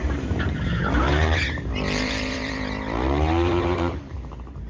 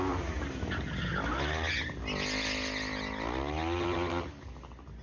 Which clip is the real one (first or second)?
second